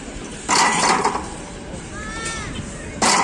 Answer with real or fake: real